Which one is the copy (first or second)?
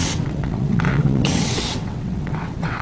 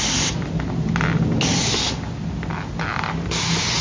first